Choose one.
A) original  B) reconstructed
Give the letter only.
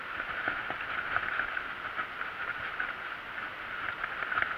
A